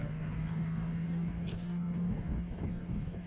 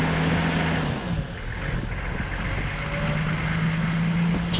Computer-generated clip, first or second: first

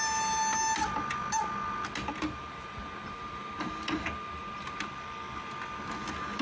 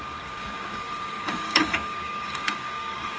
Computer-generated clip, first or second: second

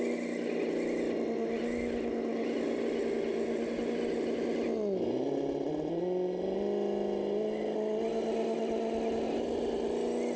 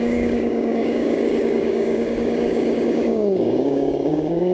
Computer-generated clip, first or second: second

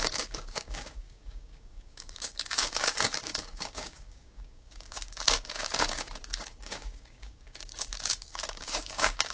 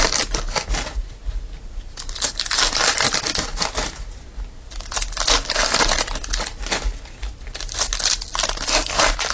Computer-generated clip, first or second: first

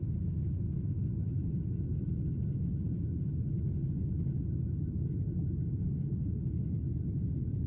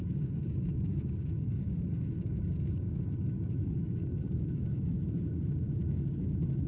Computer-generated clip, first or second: second